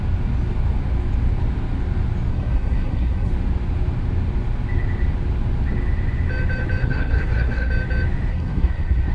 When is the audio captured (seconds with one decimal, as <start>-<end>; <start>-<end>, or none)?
0.0-2.3; 3.3-6.8; 7.7-8.3